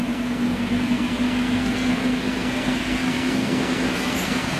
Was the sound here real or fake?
fake